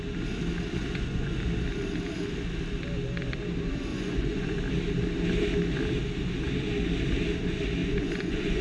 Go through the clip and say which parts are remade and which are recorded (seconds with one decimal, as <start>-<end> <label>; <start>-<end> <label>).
0.0-0.8 recorded; 0.8-1.4 remade; 1.4-3.9 recorded; 3.9-4.6 remade; 4.6-7.8 recorded; 7.8-8.6 remade